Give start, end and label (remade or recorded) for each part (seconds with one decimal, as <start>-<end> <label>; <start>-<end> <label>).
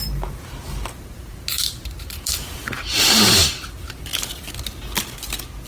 0.0-4.1 remade; 4.1-5.7 recorded